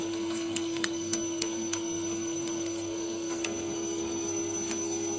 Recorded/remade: remade